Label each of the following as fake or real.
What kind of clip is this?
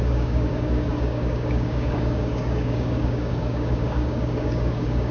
fake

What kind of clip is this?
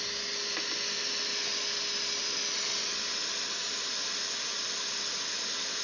real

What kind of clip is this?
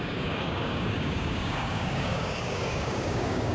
fake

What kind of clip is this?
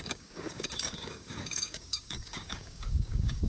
fake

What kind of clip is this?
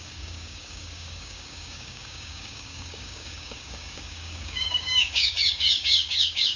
fake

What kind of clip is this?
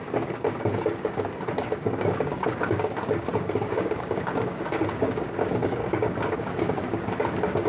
fake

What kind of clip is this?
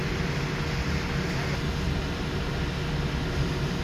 real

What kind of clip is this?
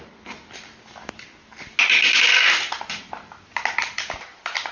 real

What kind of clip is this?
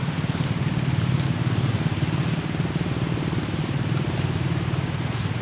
real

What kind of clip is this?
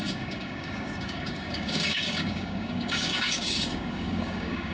fake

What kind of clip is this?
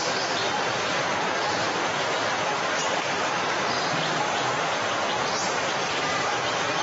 real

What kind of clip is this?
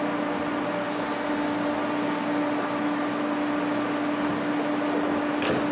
real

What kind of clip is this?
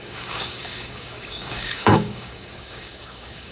fake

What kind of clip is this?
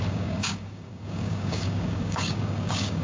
fake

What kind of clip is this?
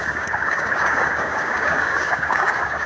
fake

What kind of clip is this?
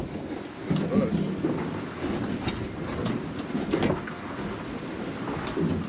real